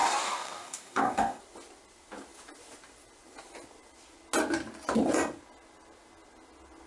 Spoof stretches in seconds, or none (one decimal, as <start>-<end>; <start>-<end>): 0.0-1.4